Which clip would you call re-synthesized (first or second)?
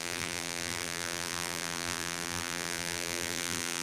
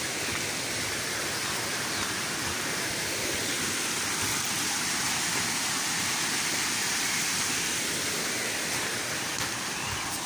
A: first